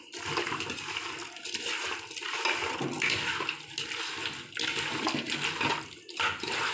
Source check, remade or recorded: recorded